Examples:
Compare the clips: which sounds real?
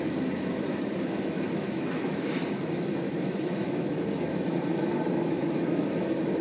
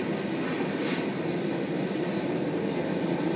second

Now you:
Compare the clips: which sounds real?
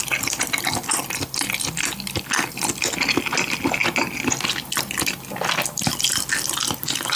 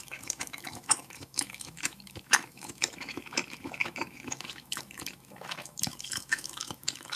first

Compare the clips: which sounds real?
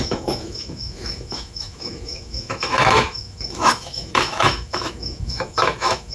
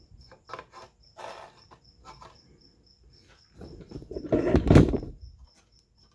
second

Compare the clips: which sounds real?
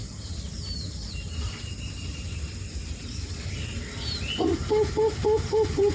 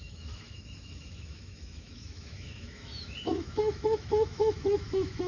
first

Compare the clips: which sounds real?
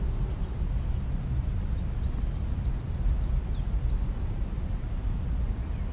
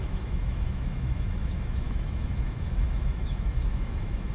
first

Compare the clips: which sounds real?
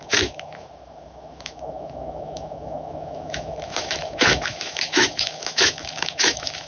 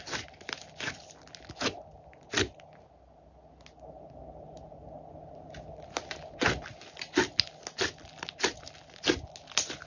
second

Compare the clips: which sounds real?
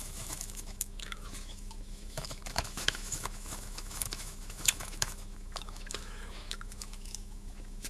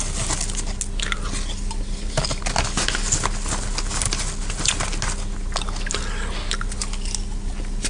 second